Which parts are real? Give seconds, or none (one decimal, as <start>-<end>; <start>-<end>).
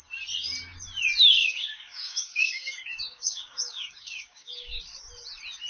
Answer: 0.0-1.4; 4.8-5.7